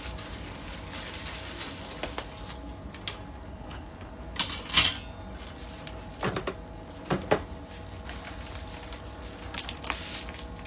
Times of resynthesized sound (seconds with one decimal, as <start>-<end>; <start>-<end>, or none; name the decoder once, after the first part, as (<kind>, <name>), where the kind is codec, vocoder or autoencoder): 3.5-4.1 (codec, HILCodec)